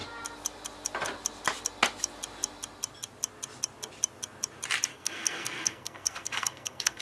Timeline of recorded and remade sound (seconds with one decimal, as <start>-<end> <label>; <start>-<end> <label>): 0.0-4.9 recorded; 4.9-7.0 remade